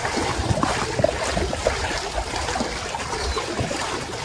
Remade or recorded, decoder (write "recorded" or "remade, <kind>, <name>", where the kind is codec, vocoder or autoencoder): recorded